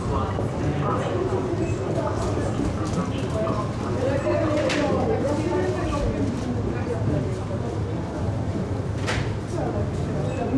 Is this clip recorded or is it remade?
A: recorded